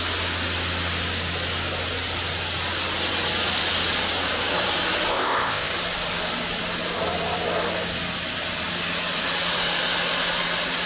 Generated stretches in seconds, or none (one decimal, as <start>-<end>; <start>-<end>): 5.1-5.7